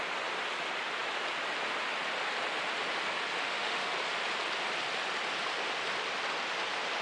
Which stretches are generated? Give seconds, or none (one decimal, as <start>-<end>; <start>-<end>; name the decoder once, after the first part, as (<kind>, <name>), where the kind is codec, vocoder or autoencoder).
3.4-3.9 (autoencoder, DAC-VAE)